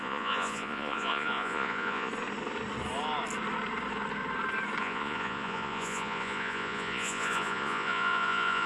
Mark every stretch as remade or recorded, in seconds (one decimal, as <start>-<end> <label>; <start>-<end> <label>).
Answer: 0.0-2.1 remade; 2.1-4.8 recorded; 4.8-8.7 remade